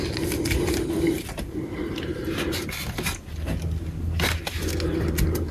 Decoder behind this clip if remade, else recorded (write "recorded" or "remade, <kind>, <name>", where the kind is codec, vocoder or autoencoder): recorded